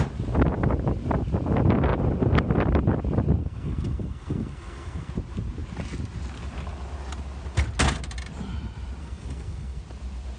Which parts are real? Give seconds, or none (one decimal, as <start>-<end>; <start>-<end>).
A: 0.0-3.4; 5.1-9.0; 9.8-10.4